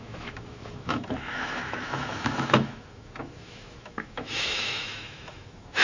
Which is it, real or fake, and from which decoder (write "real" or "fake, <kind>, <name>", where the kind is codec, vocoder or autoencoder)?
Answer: fake, autoencoder, DAC-VAE